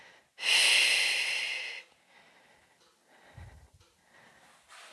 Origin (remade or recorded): recorded